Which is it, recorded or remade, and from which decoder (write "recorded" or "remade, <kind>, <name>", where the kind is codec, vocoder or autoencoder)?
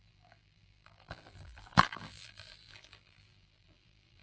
remade, vocoder, BigVGAN v2